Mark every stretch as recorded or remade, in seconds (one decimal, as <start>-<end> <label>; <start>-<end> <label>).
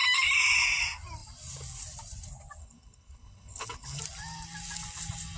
0.0-2.6 recorded; 2.6-4.0 remade; 4.0-5.4 recorded